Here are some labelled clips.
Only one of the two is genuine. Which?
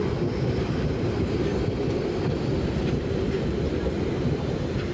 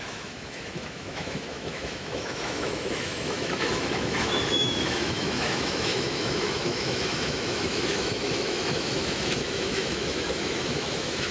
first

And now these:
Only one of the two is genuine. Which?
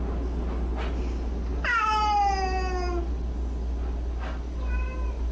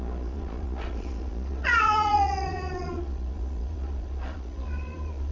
first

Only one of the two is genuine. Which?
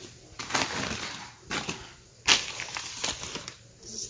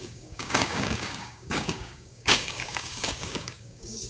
first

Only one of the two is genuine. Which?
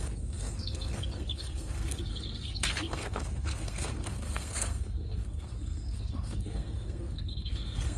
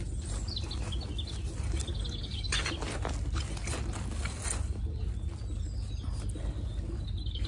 second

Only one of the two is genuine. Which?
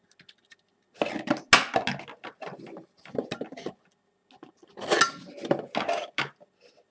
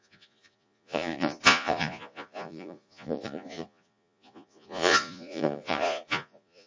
first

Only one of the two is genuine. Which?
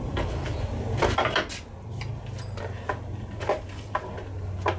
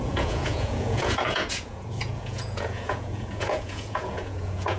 first